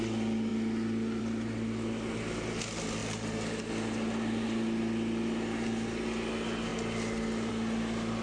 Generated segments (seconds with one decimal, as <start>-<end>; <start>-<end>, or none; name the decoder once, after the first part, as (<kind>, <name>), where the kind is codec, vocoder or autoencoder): none